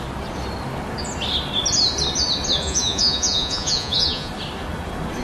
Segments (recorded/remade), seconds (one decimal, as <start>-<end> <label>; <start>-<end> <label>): 0.0-2.6 recorded; 2.6-4.3 remade; 4.3-5.2 recorded